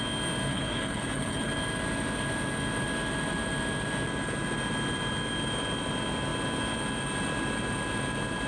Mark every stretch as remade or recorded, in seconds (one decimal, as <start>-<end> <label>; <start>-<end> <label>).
0.0-0.5 recorded; 0.5-1.5 remade; 1.5-8.5 recorded